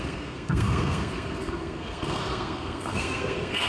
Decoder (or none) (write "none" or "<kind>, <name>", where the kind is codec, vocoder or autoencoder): codec, SNAC